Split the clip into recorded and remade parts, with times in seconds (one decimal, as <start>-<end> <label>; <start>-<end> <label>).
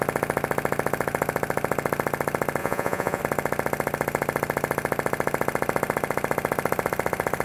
0.0-2.6 recorded; 2.6-3.2 remade; 3.2-7.4 recorded